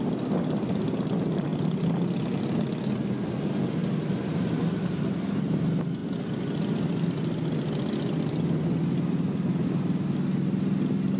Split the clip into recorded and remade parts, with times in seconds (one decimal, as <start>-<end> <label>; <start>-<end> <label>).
0.0-11.2 recorded